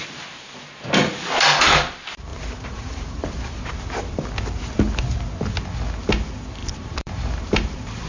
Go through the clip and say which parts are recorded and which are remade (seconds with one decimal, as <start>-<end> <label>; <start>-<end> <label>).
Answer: 0.0-2.3 recorded; 2.3-3.7 remade; 3.7-6.6 recorded; 6.6-8.1 remade